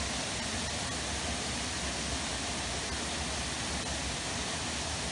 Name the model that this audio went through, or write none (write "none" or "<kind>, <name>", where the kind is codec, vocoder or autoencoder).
none